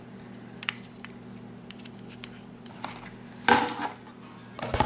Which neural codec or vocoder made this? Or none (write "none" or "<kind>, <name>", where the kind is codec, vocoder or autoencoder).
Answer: none